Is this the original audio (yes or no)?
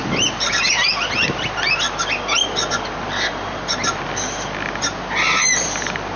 yes